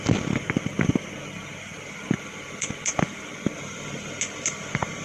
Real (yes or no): yes